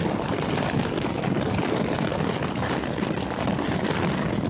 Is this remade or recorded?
recorded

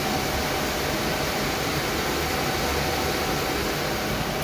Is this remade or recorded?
recorded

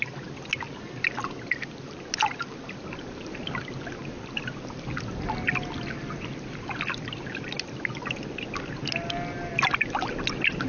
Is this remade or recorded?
recorded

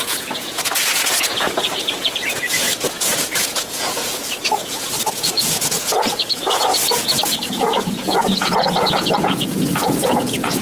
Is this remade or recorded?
remade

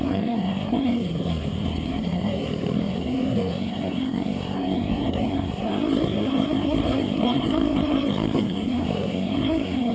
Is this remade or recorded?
remade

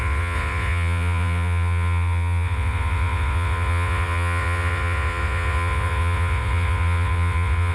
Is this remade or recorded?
remade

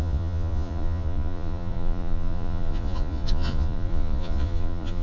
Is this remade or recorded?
remade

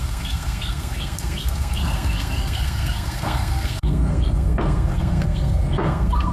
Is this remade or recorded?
remade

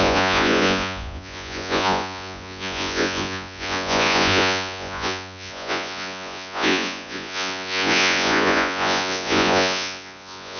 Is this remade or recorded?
remade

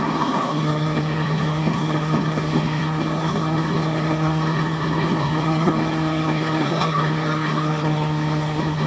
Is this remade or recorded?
remade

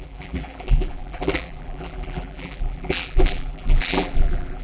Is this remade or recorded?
remade